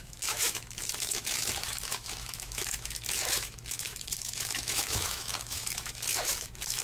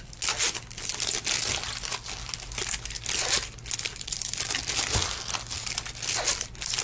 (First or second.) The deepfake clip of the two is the first